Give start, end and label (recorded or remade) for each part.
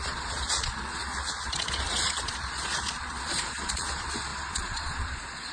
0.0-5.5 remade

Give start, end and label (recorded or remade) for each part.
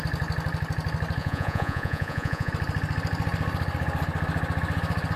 0.0-1.2 recorded; 1.2-2.5 remade; 2.5-5.2 recorded